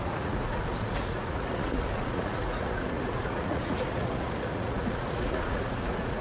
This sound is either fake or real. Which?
fake